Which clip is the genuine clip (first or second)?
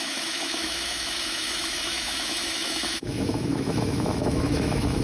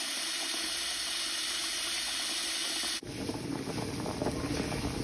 second